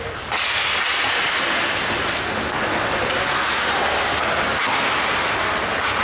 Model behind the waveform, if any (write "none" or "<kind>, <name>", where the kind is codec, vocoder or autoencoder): none